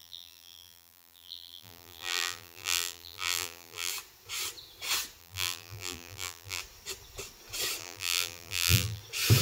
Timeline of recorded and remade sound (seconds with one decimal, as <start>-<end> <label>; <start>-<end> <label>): 0.0-3.9 remade; 3.9-5.2 recorded; 5.2-6.6 remade; 6.6-7.8 recorded; 7.8-9.0 remade; 9.0-9.4 recorded